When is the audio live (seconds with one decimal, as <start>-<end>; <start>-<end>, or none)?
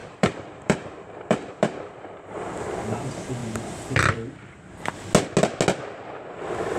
1.9-3.4; 4.6-6.8